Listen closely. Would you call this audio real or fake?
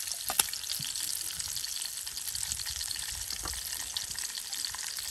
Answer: real